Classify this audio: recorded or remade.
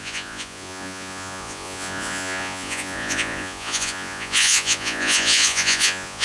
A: remade